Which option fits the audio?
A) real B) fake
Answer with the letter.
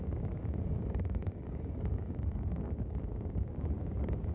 B